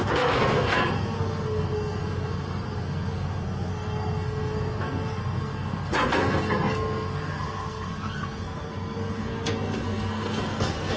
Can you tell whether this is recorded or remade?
remade